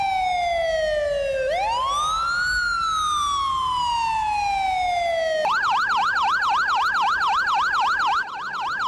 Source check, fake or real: real